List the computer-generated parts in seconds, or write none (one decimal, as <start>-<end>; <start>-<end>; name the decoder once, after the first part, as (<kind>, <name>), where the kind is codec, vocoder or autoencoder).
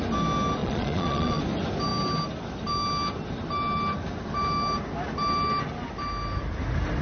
0.6-1.4 (vocoder, Vocos)